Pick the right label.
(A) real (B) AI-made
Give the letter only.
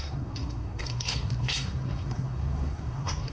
B